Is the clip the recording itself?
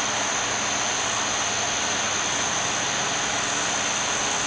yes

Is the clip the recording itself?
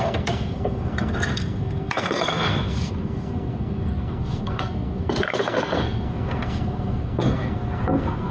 no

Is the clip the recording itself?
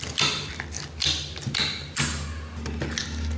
yes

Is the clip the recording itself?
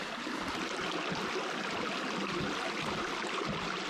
yes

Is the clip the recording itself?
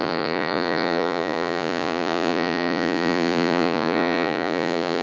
no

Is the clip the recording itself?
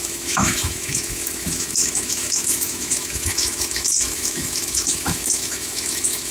no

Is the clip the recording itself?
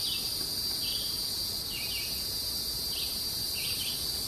yes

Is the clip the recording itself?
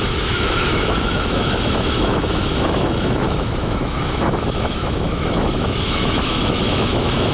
no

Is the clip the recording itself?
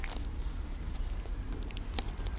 yes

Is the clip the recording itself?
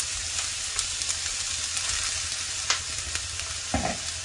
yes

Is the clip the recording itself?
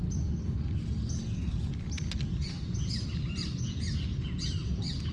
yes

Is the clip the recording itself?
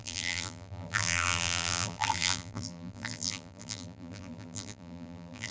no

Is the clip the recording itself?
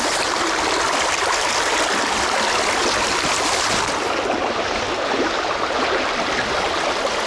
yes